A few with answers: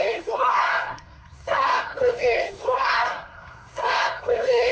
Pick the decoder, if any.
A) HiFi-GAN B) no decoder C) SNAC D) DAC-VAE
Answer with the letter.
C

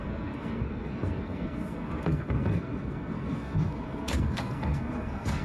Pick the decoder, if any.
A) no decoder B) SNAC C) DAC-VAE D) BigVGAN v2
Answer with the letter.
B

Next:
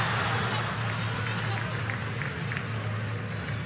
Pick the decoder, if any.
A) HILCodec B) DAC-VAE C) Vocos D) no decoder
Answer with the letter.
D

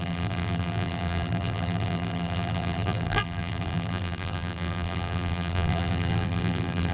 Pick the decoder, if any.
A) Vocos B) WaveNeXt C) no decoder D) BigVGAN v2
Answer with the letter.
D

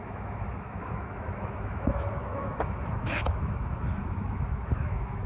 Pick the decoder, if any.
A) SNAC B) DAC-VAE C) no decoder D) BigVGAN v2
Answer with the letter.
B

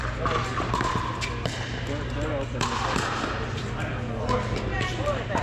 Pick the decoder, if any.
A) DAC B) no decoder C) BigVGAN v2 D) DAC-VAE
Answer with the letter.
B